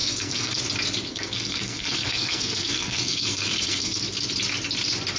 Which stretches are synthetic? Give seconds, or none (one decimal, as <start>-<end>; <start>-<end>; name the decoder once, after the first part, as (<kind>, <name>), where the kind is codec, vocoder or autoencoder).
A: 0.0-0.6 (codec, SNAC); 1.1-4.0

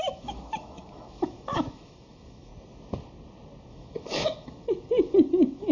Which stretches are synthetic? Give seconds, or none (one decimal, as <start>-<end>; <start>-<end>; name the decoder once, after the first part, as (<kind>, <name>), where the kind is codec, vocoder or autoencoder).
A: 0.0-2.5 (autoencoder, DAC-VAE); 3.7-5.7

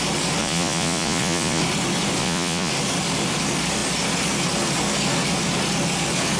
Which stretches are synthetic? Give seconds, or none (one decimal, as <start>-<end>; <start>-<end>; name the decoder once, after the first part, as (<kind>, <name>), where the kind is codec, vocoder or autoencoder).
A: 0.4-1.6 (vocoder, Vocos); 2.2-2.7

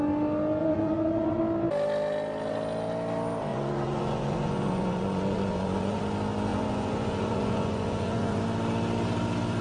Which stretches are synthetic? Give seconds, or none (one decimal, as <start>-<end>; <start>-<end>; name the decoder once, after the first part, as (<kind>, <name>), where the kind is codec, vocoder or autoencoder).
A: 0.6-1.4 (vocoder, Vocos); 3.5-6.0; 6.5-8.4

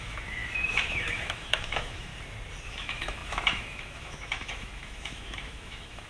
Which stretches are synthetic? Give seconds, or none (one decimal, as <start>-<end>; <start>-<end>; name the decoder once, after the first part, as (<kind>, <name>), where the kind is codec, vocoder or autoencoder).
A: 0.0-2.1 (autoencoder, DAC-VAE); 2.6-6.1

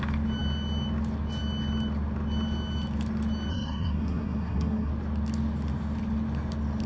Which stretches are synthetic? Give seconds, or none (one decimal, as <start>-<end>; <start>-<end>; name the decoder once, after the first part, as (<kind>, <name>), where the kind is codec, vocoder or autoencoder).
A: 3.5-4.9 (codec, SNAC)